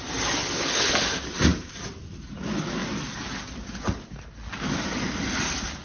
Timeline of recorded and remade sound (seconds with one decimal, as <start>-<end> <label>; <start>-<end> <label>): 0.0-0.4 recorded; 0.4-0.9 remade; 0.9-5.8 recorded